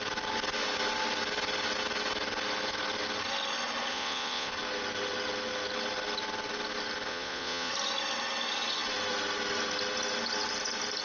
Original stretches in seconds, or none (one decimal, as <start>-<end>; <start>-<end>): 0.0-3.9; 4.5-7.1; 7.7-11.0